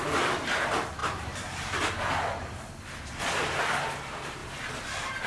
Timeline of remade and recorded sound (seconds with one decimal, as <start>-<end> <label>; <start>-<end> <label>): 0.0-1.0 recorded; 1.0-2.7 remade; 2.7-5.3 recorded